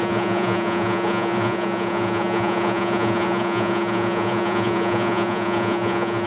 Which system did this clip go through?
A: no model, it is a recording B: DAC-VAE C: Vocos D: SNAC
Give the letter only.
C